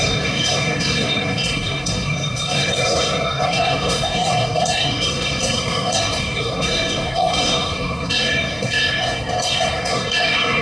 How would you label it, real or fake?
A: fake